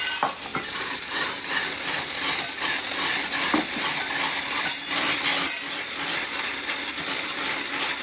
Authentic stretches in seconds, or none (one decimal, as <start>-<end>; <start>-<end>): 0.0-8.0